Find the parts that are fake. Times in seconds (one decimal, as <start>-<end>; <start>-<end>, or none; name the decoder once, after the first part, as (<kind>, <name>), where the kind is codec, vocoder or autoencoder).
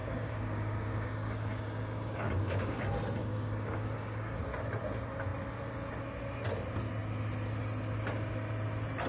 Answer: 0.0-2.8 (codec, DAC); 3.2-4.4